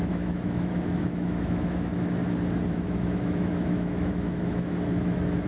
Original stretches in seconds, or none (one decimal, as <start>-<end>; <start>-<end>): 2.2-2.7